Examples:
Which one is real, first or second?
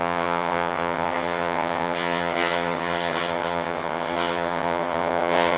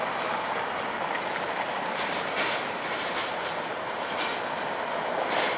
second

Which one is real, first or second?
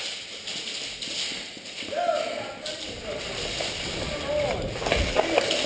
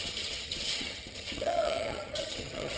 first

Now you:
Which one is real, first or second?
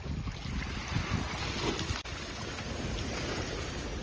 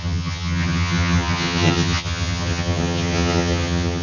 first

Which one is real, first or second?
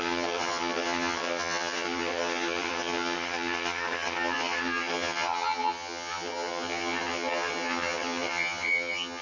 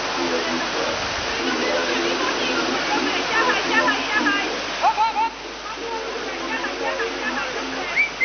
second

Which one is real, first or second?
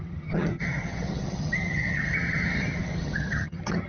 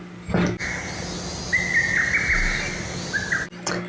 second